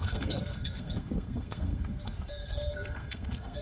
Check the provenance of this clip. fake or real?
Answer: fake